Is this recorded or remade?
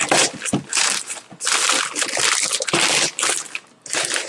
recorded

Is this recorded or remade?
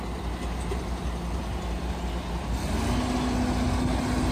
recorded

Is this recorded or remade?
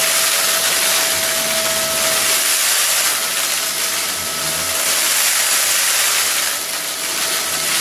recorded